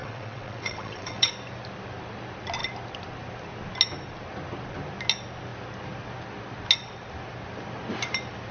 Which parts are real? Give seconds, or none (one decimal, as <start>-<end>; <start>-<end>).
1.3-8.5